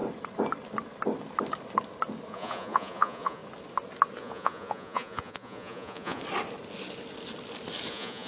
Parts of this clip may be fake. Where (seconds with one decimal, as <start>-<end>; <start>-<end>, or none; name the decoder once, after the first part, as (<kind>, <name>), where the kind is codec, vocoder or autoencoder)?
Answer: 2.3-3.4 (vocoder, Vocos); 4.2-6.2; 7.9-8.3